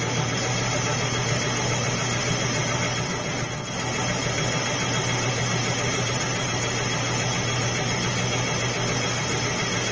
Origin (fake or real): real